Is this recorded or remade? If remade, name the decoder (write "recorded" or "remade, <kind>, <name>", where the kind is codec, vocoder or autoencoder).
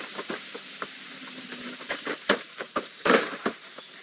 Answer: remade, vocoder, BigVGAN v2